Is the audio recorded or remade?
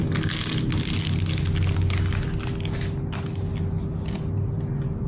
recorded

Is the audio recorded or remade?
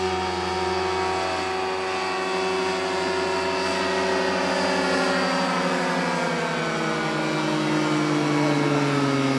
recorded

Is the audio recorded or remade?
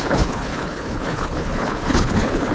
remade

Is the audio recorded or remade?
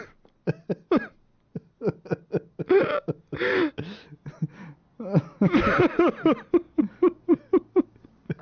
recorded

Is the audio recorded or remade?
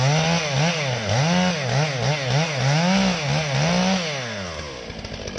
recorded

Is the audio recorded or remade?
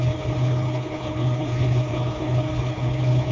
remade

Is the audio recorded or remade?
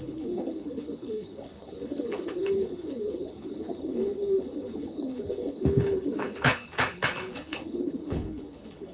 remade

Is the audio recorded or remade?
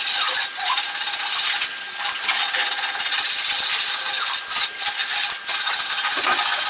recorded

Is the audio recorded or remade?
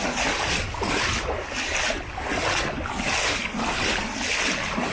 recorded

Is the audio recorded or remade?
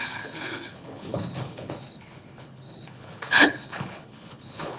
remade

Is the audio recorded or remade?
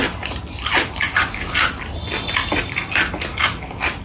recorded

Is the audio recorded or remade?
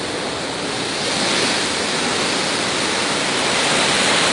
recorded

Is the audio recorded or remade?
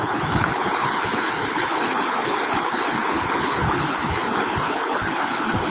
remade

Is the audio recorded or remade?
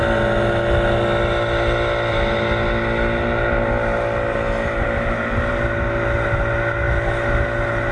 recorded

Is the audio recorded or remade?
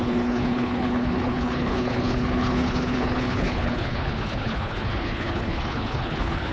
remade